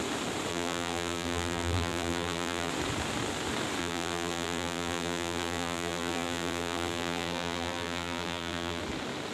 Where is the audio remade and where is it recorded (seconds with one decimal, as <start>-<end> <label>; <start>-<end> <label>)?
0.0-0.5 recorded; 0.5-2.7 remade; 2.7-3.8 recorded; 3.8-8.8 remade; 8.8-9.3 recorded